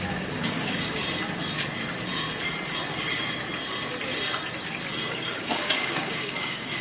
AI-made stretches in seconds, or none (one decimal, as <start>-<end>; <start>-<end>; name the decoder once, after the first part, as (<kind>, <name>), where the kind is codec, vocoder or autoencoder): 0.0-1.0 (codec, DAC); 5.1-6.8